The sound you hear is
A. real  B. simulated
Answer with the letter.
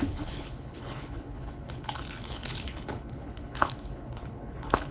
B